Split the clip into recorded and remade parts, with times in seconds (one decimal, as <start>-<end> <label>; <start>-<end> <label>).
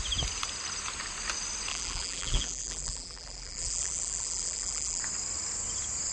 0.0-1.7 recorded; 1.7-5.0 remade; 5.0-6.1 recorded